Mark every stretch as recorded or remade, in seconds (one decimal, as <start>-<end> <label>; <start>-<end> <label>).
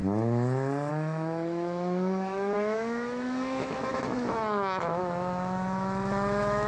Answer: 0.0-0.9 recorded; 0.9-6.7 remade